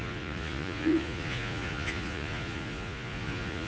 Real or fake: fake